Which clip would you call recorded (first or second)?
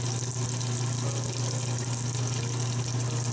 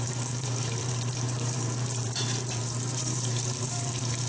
first